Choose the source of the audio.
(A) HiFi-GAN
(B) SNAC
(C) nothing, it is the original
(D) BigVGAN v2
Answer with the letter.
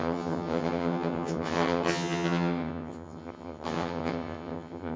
A